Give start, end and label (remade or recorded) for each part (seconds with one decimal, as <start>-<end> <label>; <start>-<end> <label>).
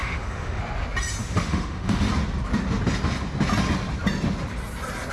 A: 0.0-0.6 remade; 0.6-1.2 recorded; 1.2-2.1 remade; 2.1-5.1 recorded